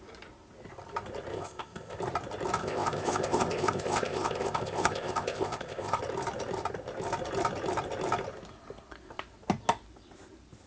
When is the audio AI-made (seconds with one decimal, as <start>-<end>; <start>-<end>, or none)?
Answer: 1.3-2.0; 2.6-6.0